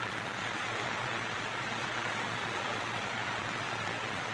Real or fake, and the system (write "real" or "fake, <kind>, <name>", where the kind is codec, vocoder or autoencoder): fake, vocoder, Vocos